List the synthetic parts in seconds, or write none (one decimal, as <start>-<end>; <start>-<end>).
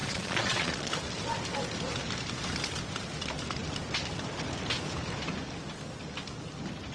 0.0-0.9